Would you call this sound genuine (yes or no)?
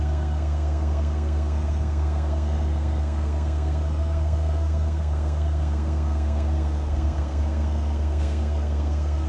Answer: no